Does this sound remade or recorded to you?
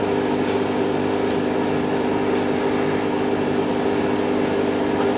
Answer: recorded